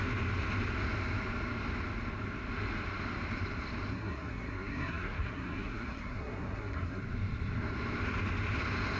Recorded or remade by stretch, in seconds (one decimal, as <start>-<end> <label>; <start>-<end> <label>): 0.0-3.9 recorded; 3.9-7.0 remade; 7.0-9.0 recorded

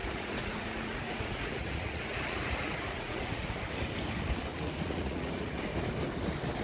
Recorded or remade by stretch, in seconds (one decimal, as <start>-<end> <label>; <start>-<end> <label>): 0.0-3.6 remade; 3.6-4.5 recorded; 4.5-5.6 remade; 5.6-6.6 recorded